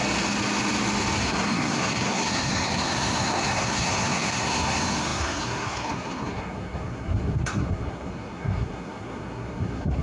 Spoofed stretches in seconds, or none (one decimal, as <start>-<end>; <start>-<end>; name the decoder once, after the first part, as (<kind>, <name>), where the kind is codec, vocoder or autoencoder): 1.2-10.0 (codec, SNAC)